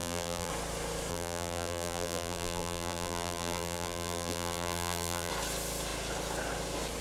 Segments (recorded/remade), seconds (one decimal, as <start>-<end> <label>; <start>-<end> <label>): 0.0-0.5 remade; 0.5-1.1 recorded; 1.1-5.3 remade; 5.3-7.0 recorded